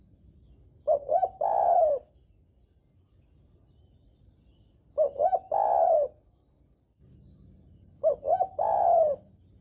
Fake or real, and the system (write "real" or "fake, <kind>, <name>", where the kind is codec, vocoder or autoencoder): real